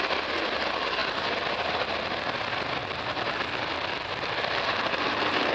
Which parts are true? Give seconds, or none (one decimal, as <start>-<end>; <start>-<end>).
0.0-2.8